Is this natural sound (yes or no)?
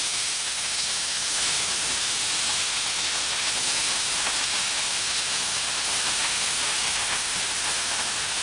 no